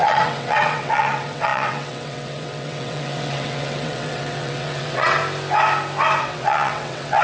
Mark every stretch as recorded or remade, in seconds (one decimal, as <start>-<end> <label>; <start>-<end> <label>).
0.0-5.2 remade; 5.2-6.2 recorded; 6.2-7.2 remade